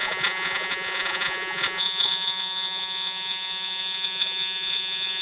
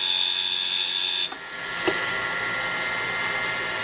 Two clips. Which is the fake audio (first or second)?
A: first